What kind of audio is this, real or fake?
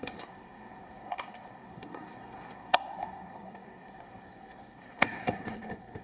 fake